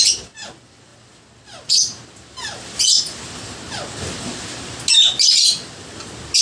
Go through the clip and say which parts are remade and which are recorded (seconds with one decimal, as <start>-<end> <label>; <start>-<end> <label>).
0.0-6.4 recorded